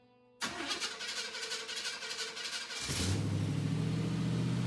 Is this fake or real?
real